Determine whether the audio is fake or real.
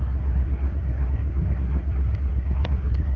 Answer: fake